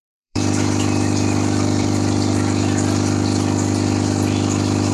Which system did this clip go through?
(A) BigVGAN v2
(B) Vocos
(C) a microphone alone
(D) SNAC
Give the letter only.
A